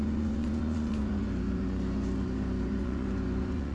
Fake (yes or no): yes